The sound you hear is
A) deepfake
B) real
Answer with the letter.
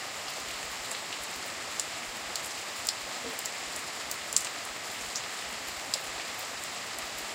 B